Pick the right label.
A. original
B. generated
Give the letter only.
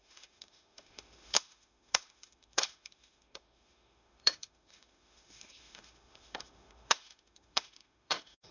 B